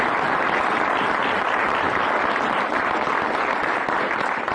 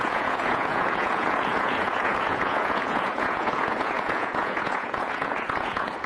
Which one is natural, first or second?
first